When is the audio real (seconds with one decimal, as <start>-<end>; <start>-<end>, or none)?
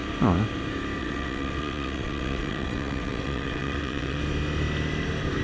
0.0-1.0; 4.2-5.4